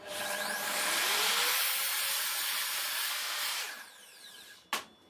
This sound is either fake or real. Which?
fake